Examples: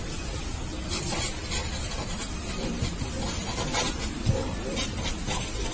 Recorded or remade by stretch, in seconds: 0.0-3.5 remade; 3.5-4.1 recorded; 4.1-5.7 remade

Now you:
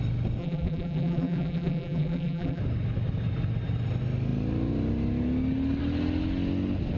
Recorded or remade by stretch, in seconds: 0.0-0.4 recorded; 0.4-2.6 remade; 2.6-7.0 recorded